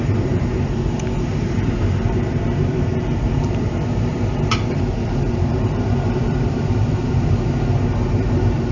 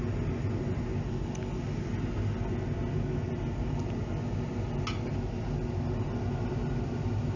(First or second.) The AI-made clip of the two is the first